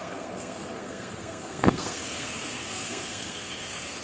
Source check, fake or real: fake